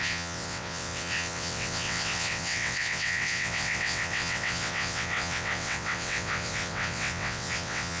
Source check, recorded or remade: remade